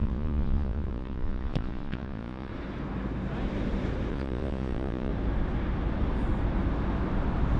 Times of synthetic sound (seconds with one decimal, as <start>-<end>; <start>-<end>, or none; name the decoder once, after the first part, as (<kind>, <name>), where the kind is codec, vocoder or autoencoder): 0.0-2.5 (vocoder, Vocos); 4.1-5.1